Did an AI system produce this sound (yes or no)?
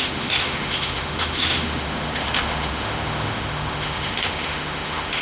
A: yes